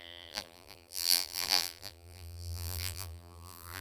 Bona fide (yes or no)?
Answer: no